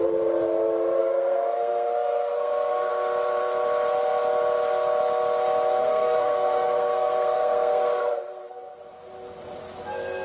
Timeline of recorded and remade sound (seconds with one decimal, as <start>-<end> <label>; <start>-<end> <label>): 0.0-1.0 recorded; 1.0-2.9 remade; 2.9-5.8 recorded; 5.8-8.8 remade; 8.8-10.2 recorded